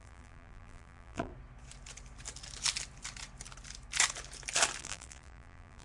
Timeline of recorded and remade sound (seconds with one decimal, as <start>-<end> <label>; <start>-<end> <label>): 0.0-1.3 remade; 1.3-4.8 recorded; 4.8-5.8 remade